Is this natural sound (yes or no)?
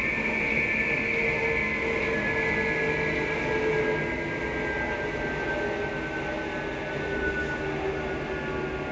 yes